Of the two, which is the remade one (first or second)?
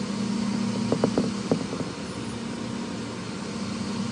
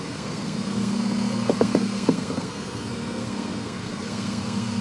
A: second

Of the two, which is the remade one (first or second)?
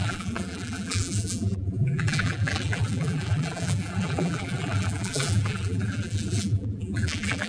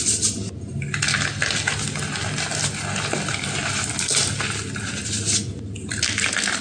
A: first